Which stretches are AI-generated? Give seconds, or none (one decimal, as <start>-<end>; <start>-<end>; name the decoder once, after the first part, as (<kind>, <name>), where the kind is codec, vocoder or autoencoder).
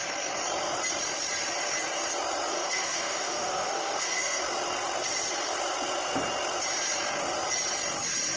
2.5-4.4 (autoencoder, DAC-VAE)